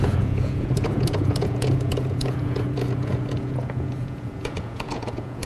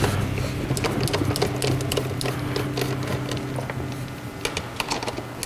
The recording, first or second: second